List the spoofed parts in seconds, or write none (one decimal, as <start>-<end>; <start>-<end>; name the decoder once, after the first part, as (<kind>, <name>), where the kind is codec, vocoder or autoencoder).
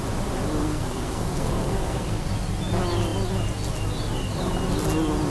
0.6-2.3 (codec, SNAC)